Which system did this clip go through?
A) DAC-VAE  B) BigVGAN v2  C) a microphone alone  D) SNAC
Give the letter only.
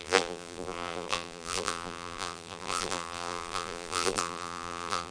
B